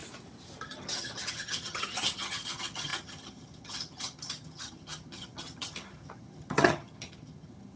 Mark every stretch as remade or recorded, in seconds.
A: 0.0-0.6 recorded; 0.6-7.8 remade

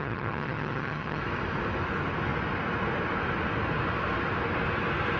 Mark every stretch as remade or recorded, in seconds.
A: 0.0-1.2 remade; 1.2-5.2 recorded

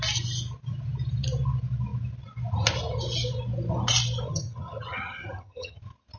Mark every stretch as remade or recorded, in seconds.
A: 0.0-4.3 recorded; 4.3-5.8 remade; 5.8-6.2 recorded

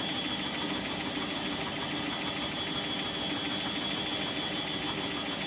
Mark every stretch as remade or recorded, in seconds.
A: 0.0-5.5 recorded

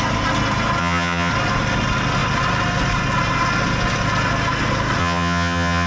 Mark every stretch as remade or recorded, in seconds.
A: 0.0-0.8 recorded; 0.8-1.3 remade; 1.3-5.0 recorded; 5.0-5.9 remade

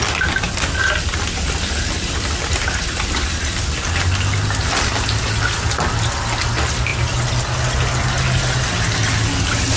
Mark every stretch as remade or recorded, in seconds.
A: 0.0-9.8 recorded